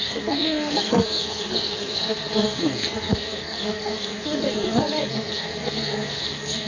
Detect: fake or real fake